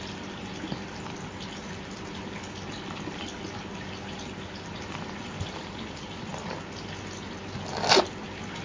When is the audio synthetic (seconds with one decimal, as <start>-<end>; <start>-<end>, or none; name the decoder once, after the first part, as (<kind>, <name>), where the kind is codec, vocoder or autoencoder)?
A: none